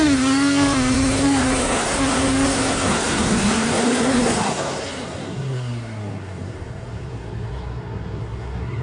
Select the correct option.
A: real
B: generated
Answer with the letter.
B